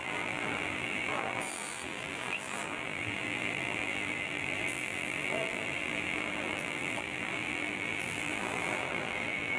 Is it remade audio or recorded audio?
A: remade